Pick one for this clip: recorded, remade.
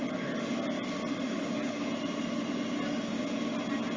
recorded